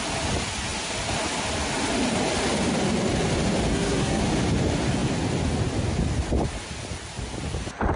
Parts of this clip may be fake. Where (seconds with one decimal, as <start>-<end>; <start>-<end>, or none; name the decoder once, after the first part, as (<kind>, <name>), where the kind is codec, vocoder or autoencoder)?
3.7-4.2 (codec, SNAC)